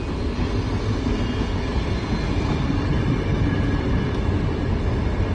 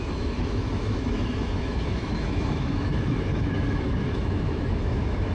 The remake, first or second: second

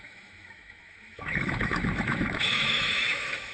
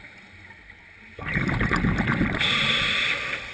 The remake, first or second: first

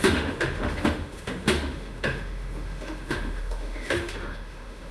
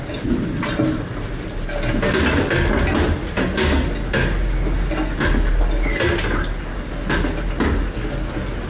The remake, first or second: first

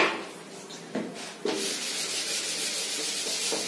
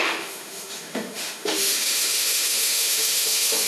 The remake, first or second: second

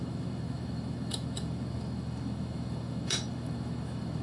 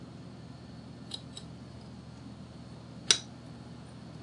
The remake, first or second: first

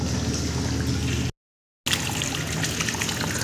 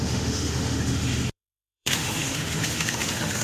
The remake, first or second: second